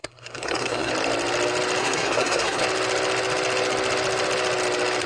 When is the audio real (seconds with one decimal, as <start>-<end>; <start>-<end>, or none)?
0.9-1.8; 2.6-5.1